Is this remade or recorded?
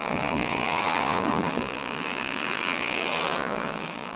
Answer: remade